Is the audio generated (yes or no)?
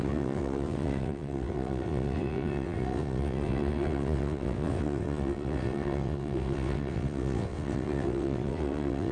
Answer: yes